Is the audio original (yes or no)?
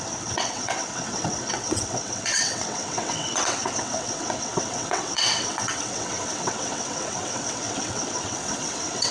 no